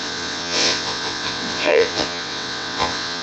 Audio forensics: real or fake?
fake